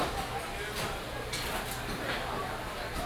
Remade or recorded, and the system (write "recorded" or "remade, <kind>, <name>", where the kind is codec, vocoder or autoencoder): recorded